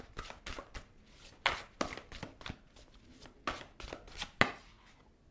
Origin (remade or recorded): recorded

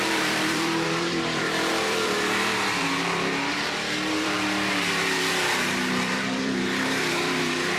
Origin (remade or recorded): remade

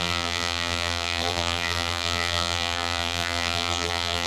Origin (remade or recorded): remade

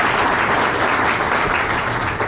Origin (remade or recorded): recorded